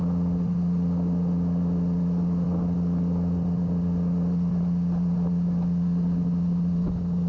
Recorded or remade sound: recorded